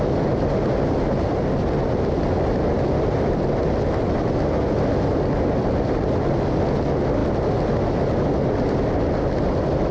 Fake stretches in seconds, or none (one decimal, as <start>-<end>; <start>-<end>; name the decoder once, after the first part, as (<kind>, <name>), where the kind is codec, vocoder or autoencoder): none